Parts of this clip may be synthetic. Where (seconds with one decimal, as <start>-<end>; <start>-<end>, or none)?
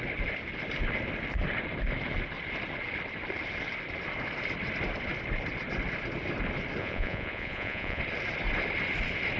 6.8-8.0